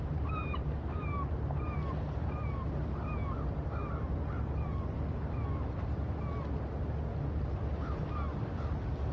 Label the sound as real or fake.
real